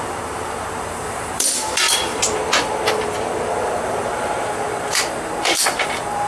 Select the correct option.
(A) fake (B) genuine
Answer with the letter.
A